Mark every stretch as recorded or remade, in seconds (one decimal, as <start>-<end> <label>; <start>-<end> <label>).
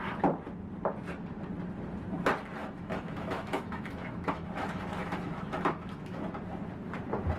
0.0-2.6 recorded; 2.6-6.2 remade; 6.2-7.4 recorded